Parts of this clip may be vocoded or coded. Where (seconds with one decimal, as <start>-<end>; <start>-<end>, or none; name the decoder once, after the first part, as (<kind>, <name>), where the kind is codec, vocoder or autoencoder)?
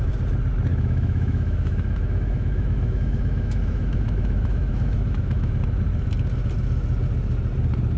0.7-5.5 (autoencoder, DAC-VAE)